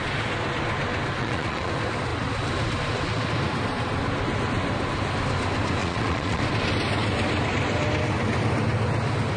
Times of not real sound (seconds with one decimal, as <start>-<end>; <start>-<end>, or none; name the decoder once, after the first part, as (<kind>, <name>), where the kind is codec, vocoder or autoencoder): 1.2-1.7 (vocoder, Vocos); 5.8-6.4